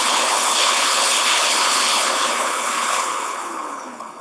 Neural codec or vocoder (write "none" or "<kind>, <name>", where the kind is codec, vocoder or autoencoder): codec, HILCodec